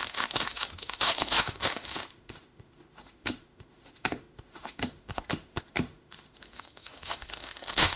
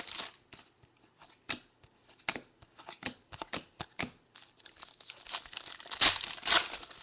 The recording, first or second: second